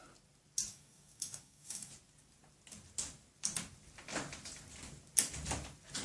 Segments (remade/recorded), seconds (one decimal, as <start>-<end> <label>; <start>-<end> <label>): 0.0-0.7 recorded; 0.7-1.9 remade; 1.9-6.0 recorded